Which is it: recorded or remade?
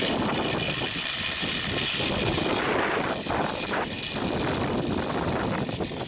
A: recorded